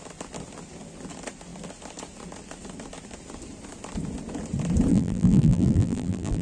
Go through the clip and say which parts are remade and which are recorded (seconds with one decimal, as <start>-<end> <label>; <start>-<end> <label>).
0.0-4.9 recorded; 4.9-6.4 remade